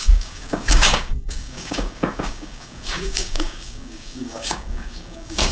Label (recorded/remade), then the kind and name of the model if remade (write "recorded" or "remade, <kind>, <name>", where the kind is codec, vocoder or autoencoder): remade, codec, DAC